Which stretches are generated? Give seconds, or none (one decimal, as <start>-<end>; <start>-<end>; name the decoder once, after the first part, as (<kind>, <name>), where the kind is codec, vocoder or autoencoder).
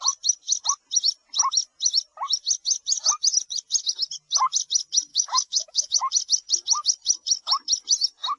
5.1-6.0 (autoencoder, DAC-VAE)